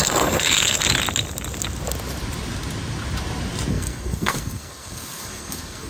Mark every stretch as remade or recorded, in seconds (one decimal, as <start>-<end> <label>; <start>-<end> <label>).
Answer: 0.0-0.8 remade; 0.8-3.7 recorded; 3.7-5.9 remade